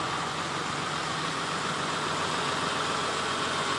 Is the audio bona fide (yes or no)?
no